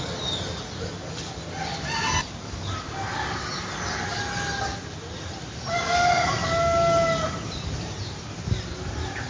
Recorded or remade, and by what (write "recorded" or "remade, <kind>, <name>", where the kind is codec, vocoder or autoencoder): recorded